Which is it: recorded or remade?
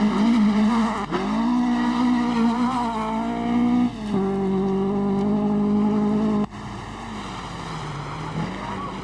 recorded